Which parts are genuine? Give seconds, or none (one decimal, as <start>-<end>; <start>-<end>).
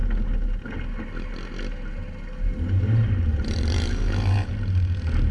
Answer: 0.0-3.1; 4.5-5.3